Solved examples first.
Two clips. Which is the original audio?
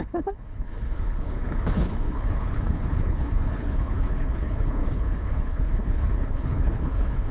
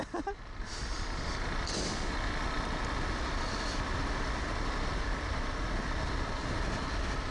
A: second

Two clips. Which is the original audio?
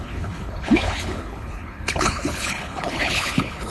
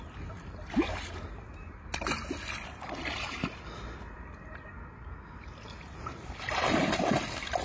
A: second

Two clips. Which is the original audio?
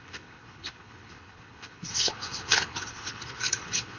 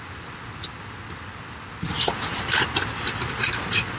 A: second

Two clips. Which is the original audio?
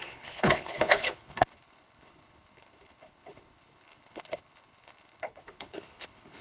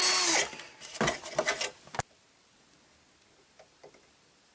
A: second